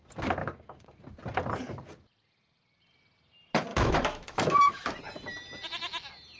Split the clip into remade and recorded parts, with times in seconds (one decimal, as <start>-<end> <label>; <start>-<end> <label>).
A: 0.0-0.4 recorded; 0.4-1.0 remade; 1.0-3.7 recorded; 3.7-5.0 remade; 5.0-6.4 recorded